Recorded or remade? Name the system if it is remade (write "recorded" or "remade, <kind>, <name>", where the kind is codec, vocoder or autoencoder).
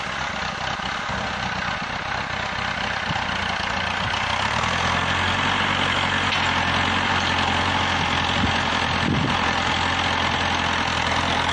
recorded